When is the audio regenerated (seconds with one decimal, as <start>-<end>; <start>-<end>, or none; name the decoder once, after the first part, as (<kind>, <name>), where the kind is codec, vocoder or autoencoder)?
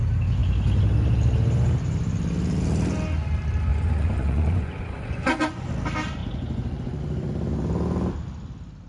3.7-5.7 (vocoder, Vocos); 6.2-7.0